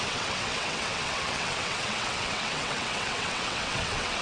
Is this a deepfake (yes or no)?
yes